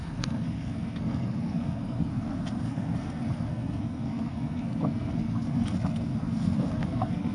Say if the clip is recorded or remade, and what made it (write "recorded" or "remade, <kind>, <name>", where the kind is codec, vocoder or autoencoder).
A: remade, codec, SNAC